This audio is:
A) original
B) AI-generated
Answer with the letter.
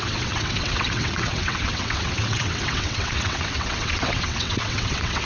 B